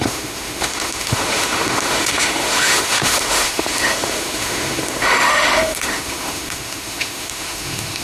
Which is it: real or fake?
fake